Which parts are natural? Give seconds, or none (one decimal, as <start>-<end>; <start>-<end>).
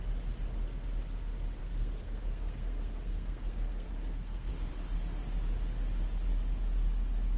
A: 0.0-1.6; 4.5-7.4